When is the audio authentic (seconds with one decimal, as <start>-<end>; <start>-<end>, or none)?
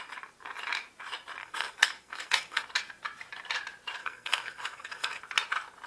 0.0-1.4; 2.6-4.0; 5.2-5.9